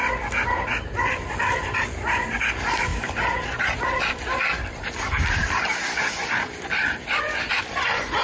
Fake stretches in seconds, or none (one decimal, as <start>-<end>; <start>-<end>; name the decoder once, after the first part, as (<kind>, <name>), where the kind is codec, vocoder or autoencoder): none